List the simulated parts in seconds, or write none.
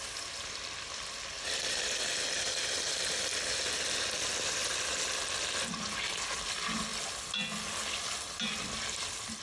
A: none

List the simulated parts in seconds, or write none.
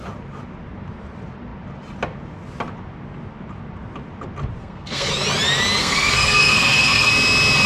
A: 4.6-5.1; 5.8-7.1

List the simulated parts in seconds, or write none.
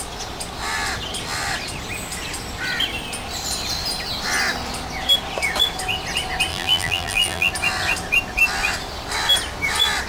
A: 6.5-7.5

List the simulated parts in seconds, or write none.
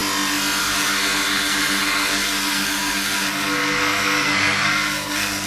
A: 0.6-5.5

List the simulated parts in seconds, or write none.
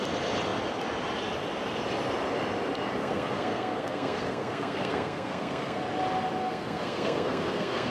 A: 3.0-5.8; 6.4-7.9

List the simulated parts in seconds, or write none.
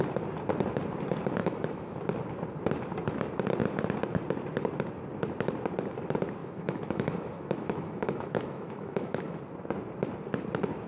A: 1.4-1.9; 6.4-9.4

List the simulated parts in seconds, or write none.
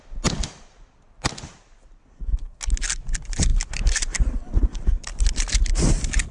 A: none